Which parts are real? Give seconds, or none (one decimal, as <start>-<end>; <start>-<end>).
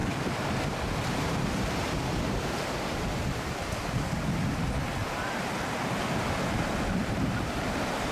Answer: 4.0-5.0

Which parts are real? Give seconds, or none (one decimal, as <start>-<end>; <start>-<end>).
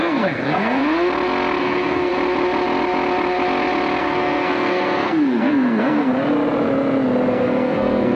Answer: 0.8-1.6; 2.1-4.0; 6.1-7.3